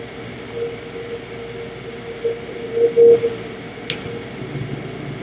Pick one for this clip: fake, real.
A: real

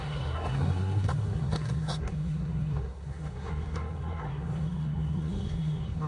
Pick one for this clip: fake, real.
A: fake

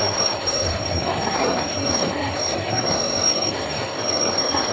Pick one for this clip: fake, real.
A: fake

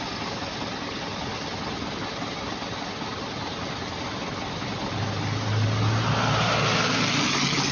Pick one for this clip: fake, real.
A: real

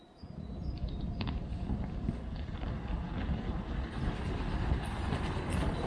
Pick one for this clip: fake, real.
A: real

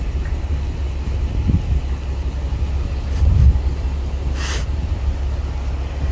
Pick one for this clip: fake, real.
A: real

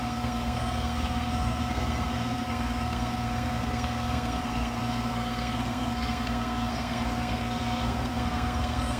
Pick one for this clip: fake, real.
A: fake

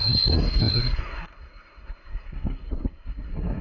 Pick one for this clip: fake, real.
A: fake